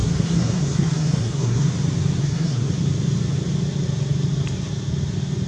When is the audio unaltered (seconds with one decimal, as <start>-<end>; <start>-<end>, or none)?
1.7-2.2; 2.7-5.5